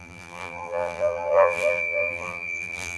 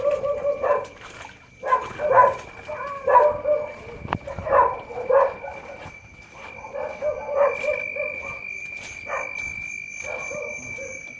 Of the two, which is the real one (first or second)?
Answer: second